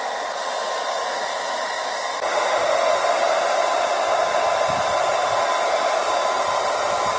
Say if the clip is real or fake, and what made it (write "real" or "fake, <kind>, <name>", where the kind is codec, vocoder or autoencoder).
real